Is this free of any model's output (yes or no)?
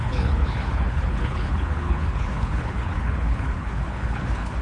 no